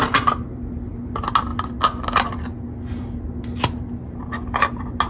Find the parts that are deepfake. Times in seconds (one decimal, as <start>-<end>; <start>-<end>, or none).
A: none